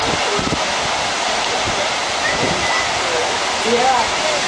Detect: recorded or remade recorded